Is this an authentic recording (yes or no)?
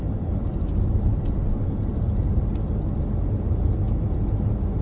yes